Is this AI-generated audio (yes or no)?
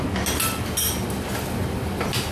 no